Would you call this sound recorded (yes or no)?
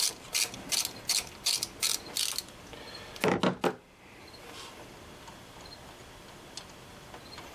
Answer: yes